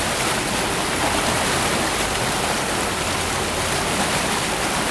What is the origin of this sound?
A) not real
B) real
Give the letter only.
B